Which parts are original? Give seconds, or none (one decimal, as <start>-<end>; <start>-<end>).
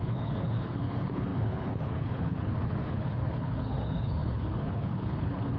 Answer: none